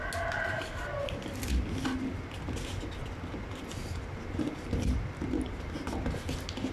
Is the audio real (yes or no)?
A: yes